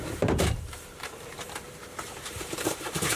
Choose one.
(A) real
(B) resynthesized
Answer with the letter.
B